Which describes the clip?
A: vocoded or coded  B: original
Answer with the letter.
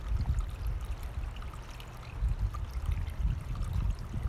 B